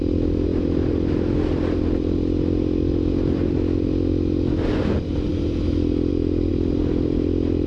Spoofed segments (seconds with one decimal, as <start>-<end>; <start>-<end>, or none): none